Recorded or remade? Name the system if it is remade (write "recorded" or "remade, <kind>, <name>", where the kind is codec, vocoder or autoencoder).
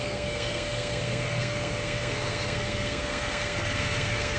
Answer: remade, codec, SNAC